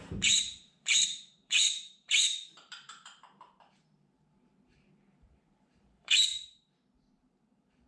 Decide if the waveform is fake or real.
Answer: fake